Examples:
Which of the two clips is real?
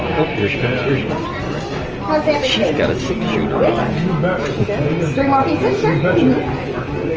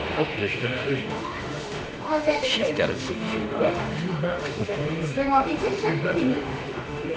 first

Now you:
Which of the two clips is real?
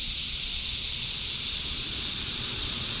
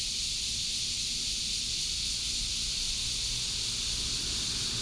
second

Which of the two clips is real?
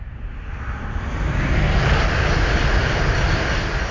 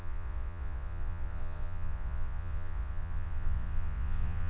first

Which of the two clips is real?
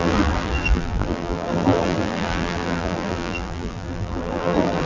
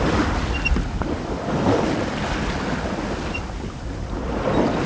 second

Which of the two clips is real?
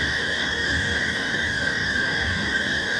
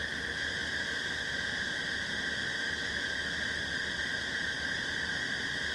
second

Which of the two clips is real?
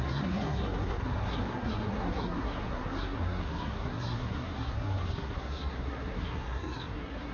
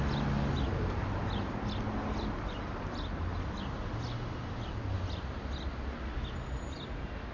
second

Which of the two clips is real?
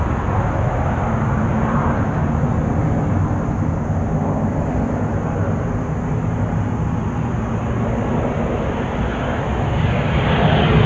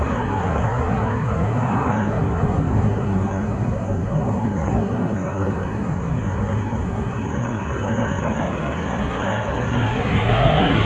first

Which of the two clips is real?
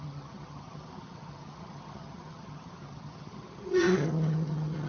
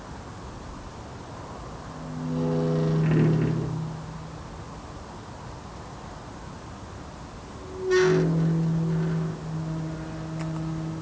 second